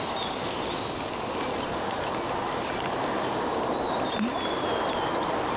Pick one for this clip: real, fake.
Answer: real